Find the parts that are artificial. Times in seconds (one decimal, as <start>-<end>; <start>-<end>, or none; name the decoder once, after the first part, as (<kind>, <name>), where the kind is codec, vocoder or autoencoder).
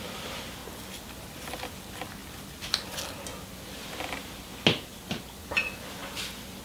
none